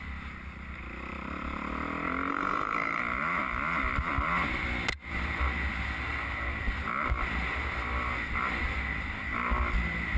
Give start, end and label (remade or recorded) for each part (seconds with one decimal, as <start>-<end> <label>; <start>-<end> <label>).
0.0-2.3 recorded; 2.3-3.0 remade; 3.0-10.2 recorded